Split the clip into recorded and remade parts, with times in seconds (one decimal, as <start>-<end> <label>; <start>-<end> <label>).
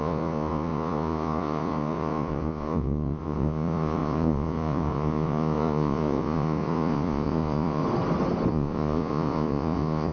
0.0-7.8 remade; 7.8-8.5 recorded; 8.5-10.1 remade